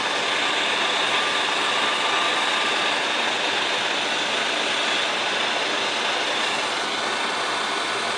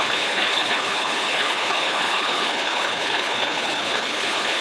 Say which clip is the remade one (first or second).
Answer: second